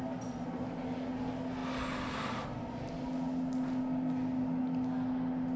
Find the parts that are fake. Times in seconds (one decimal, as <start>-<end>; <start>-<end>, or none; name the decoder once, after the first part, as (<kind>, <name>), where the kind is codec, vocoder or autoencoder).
none